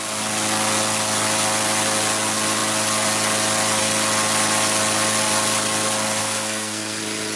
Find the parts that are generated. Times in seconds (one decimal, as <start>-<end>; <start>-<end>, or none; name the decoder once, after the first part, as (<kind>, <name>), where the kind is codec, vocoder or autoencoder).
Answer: 6.2-7.0 (codec, SNAC)